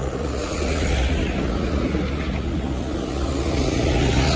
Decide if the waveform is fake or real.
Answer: fake